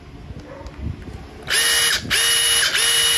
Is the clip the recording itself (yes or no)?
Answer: yes